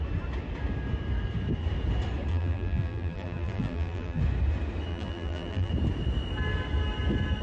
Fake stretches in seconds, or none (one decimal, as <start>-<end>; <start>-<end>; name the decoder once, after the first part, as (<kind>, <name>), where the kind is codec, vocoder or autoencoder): 2.3-4.2 (vocoder, BigVGAN v2); 4.9-5.7